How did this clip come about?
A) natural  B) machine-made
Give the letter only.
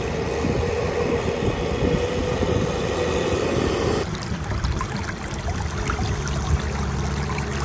A